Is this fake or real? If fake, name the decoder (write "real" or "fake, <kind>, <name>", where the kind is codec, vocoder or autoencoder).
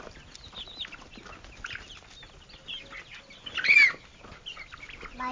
real